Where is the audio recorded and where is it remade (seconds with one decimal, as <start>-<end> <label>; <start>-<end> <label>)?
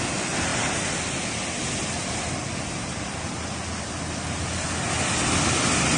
0.0-6.0 recorded